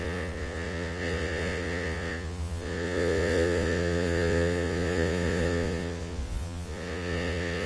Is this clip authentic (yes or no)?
no